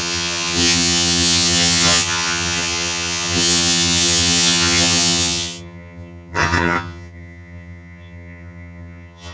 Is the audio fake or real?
fake